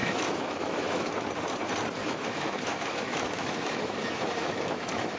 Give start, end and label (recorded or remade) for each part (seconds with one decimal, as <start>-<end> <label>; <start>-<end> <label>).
0.0-1.1 remade; 1.1-2.0 recorded; 2.0-5.2 remade